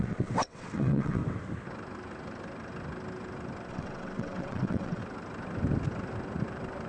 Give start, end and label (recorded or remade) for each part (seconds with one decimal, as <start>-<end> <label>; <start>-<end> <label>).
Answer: 0.0-1.2 remade; 1.2-3.7 recorded; 3.7-5.0 remade; 5.0-6.9 recorded